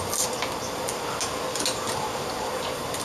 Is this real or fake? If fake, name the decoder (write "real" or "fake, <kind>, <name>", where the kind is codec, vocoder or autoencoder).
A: real